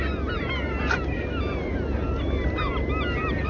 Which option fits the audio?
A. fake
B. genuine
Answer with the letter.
B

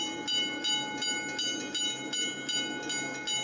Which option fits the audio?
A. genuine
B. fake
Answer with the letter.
A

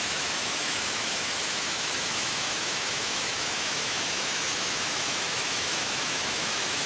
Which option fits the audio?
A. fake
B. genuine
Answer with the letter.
A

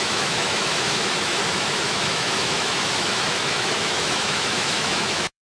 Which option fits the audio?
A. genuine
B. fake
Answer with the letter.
B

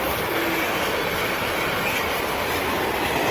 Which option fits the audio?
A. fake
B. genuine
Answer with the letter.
B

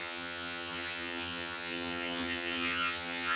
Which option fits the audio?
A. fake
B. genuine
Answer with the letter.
A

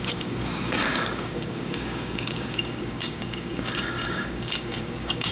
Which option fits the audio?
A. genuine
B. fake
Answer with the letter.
B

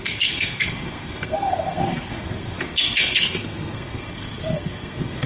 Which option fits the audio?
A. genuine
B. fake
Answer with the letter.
B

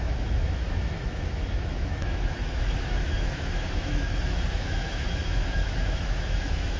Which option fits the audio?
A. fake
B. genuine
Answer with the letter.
A